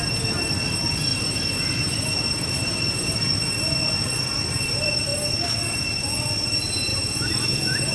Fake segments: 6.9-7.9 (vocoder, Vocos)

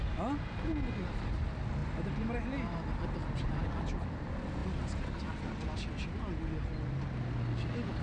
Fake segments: none